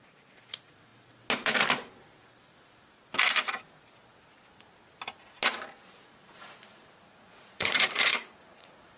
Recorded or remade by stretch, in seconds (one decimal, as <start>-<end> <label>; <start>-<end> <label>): 0.0-0.9 remade; 0.9-5.8 recorded; 5.8-9.0 remade

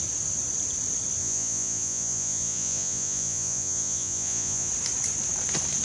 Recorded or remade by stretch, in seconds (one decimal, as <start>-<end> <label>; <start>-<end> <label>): 0.0-1.2 recorded; 1.2-4.7 remade; 4.7-5.8 recorded

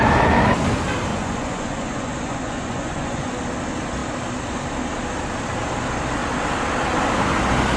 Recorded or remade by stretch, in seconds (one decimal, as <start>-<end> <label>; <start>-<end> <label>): 0.0-1.1 recorded; 1.1-3.3 remade; 3.3-7.8 recorded